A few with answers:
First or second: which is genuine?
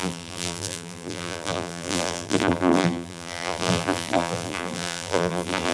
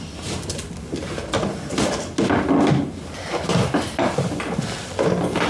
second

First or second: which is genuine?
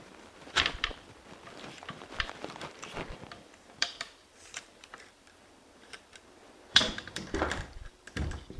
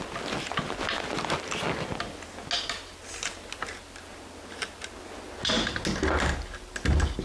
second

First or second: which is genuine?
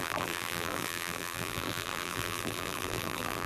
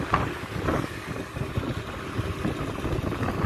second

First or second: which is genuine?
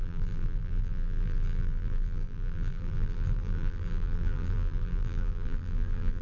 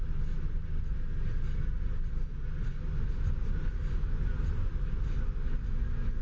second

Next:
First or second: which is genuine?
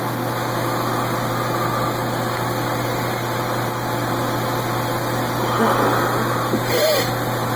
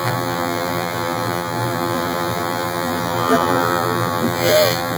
first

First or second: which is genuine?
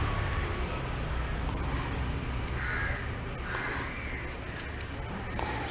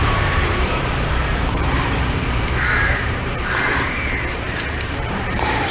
first